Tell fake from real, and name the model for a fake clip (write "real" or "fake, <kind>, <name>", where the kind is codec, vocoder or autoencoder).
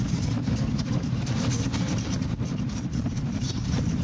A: fake, vocoder, BigVGAN v2